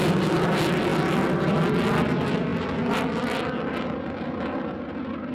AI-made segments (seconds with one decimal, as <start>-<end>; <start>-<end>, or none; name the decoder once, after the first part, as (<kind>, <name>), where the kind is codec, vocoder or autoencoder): none